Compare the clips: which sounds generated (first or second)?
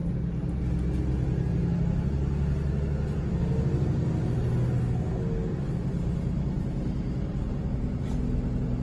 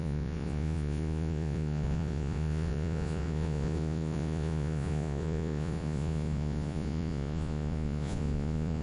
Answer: second